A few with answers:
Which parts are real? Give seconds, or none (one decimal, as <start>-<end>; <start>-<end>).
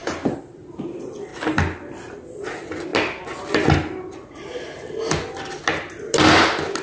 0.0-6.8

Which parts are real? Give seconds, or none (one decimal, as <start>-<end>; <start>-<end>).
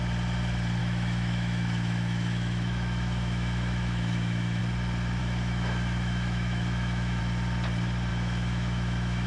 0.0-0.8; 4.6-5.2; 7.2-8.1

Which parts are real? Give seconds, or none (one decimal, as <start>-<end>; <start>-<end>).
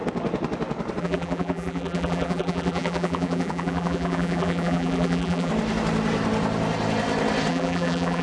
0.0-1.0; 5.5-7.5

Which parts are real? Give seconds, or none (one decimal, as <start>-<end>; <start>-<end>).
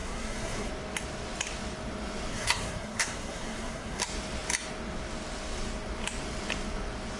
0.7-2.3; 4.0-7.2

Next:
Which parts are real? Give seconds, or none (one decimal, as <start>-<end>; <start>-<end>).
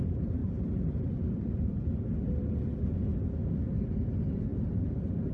0.0-0.4; 2.0-4.5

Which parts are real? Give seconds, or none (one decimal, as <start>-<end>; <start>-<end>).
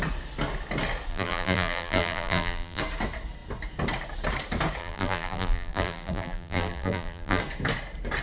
0.0-1.1; 2.8-4.8; 7.4-8.2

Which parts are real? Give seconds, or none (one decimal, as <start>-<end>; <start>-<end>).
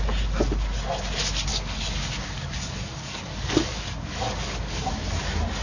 0.0-1.5; 4.9-5.6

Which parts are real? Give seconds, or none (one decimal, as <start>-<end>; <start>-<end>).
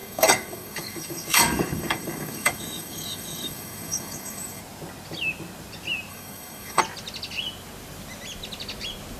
4.6-6.1; 6.8-9.2